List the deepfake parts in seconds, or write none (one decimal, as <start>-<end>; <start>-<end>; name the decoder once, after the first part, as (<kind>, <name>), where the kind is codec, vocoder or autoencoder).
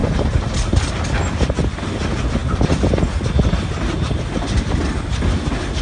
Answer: none